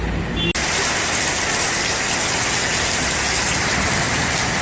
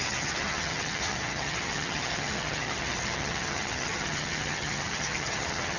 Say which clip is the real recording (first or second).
first